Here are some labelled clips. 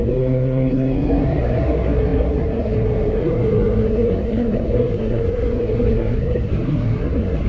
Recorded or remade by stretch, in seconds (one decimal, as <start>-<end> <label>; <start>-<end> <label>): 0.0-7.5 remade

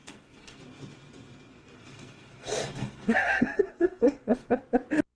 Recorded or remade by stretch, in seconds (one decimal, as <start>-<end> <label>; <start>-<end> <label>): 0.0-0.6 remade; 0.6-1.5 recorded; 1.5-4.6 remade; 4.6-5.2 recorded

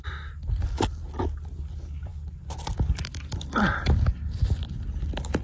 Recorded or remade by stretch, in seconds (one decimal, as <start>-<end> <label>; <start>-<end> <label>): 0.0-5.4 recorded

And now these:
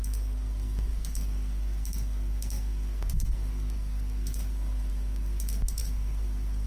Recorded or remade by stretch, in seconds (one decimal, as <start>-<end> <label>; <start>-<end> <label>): 0.0-6.7 remade